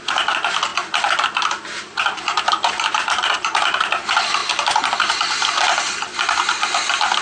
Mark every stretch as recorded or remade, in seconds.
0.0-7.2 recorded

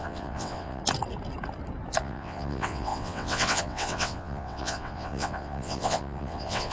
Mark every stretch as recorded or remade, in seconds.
0.0-0.8 remade; 0.8-2.0 recorded; 2.0-6.7 remade

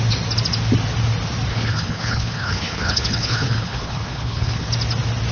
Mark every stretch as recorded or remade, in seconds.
0.0-1.5 recorded; 1.5-4.7 remade; 4.7-5.3 recorded

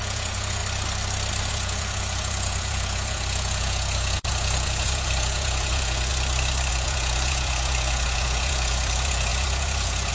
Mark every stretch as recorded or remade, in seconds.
0.0-0.6 remade; 0.6-1.5 recorded; 1.5-6.1 remade; 6.1-6.7 recorded; 6.7-10.1 remade

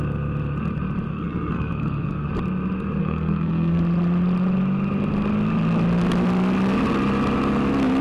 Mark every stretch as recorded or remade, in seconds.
0.0-1.1 recorded; 1.1-2.3 remade; 2.3-3.0 recorded; 3.0-3.8 remade; 3.8-8.0 recorded

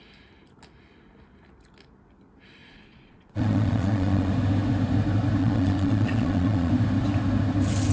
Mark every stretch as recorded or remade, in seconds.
0.0-2.6 recorded; 2.6-4.3 remade; 4.3-5.4 recorded; 5.4-6.7 remade; 6.7-7.9 recorded

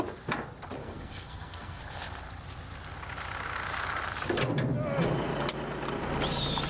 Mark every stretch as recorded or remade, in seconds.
0.0-0.8 recorded; 0.8-1.8 remade; 1.8-6.7 recorded

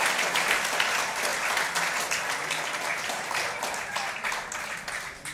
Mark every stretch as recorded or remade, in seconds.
0.0-5.3 recorded